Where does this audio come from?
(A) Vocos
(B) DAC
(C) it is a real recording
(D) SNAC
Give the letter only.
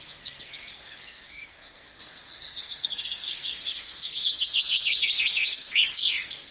D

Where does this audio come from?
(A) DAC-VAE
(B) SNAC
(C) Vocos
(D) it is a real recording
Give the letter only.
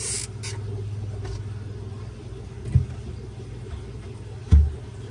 D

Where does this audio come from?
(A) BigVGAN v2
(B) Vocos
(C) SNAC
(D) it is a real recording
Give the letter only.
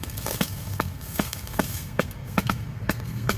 C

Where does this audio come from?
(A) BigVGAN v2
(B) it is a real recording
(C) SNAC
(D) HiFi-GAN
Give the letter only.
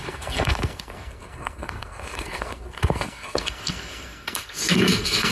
C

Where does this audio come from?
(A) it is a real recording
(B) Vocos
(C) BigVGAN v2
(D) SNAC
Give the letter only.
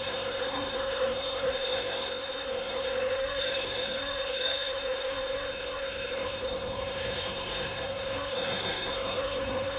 D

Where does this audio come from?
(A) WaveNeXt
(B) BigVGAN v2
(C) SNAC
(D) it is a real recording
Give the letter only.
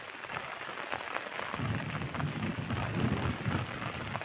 D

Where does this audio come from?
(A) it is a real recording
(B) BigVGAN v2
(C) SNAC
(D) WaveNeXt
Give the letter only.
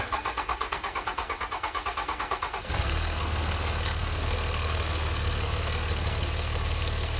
C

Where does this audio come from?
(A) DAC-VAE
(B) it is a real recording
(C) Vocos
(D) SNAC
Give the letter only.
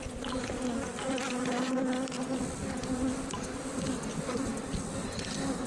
B